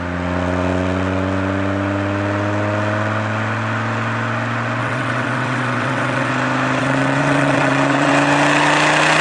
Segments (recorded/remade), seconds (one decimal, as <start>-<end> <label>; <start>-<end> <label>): 0.0-4.8 recorded; 4.8-6.3 remade; 6.3-6.8 recorded; 6.8-8.1 remade; 8.1-9.2 recorded